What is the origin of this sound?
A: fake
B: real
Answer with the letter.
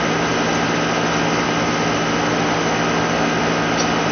B